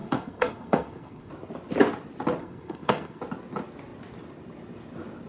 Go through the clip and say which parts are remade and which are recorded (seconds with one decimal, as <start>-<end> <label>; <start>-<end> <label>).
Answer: 0.0-1.3 remade; 1.3-2.4 recorded; 2.4-3.2 remade; 3.2-5.3 recorded